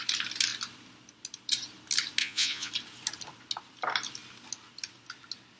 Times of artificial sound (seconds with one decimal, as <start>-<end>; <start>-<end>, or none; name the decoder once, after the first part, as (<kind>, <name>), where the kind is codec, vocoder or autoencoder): 2.2-2.7 (vocoder, Vocos)